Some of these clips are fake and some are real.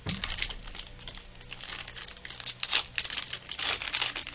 real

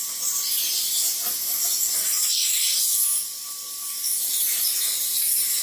fake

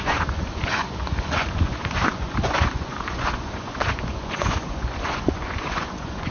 fake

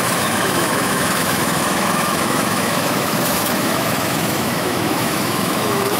fake